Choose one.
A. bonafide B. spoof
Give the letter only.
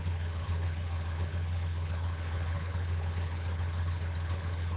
B